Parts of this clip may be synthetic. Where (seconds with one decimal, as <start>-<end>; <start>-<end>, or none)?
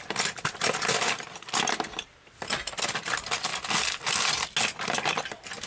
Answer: none